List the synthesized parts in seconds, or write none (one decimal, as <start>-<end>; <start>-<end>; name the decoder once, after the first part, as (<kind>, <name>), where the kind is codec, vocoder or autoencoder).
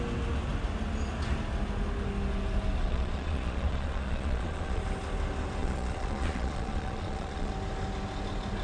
2.8-4.8 (vocoder, Vocos); 5.6-7.5